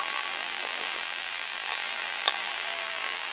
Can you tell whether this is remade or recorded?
remade